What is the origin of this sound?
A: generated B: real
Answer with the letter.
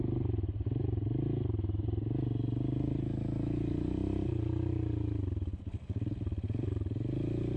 B